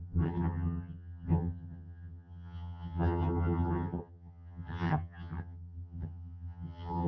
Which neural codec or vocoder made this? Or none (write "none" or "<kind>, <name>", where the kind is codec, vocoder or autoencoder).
vocoder, HiFi-GAN